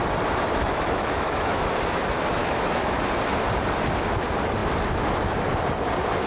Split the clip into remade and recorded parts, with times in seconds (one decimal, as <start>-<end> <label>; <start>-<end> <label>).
0.0-0.6 recorded; 0.6-1.7 remade; 1.7-2.4 recorded; 2.4-3.0 remade; 3.0-6.3 recorded